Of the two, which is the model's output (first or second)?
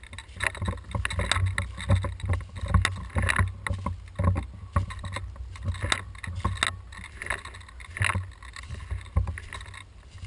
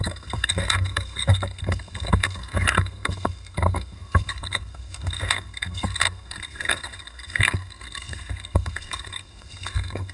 second